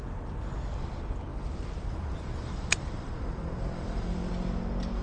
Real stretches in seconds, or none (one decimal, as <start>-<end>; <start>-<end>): 0.0-1.3; 4.3-5.0